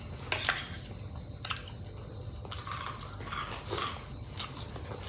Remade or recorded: recorded